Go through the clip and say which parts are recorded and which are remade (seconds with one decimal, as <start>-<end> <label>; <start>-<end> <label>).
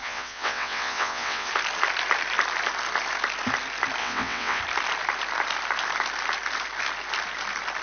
0.0-1.5 remade; 1.5-4.0 recorded; 4.0-4.6 remade; 4.6-7.8 recorded